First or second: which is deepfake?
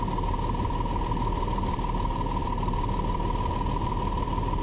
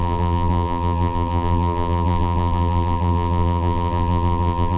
second